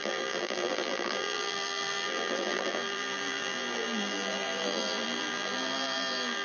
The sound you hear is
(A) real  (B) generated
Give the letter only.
B